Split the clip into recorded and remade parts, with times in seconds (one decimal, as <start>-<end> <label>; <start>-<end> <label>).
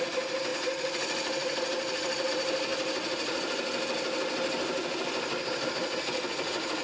0.0-6.8 recorded